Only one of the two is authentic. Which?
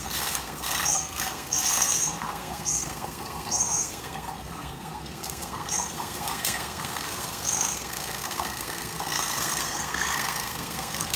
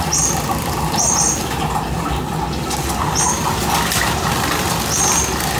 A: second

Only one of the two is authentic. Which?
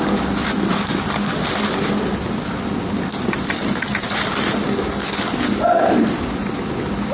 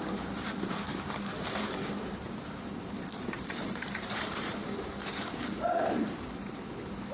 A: first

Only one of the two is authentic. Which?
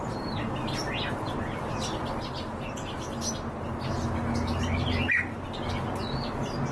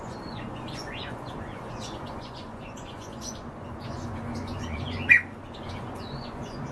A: first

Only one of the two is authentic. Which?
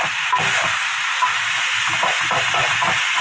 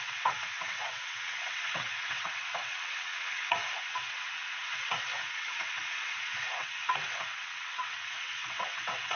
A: first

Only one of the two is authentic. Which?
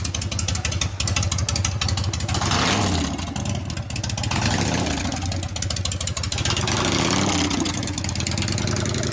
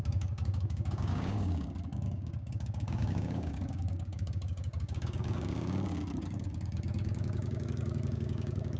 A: first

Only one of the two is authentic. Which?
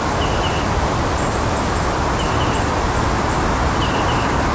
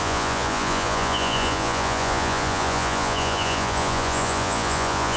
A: first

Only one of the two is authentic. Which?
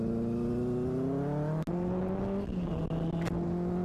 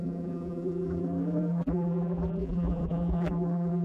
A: first